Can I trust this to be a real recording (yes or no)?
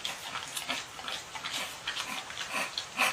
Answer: yes